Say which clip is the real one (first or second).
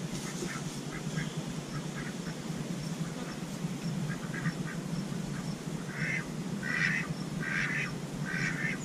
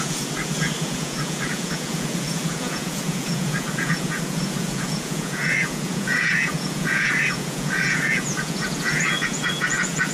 first